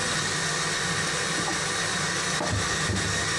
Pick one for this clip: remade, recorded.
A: recorded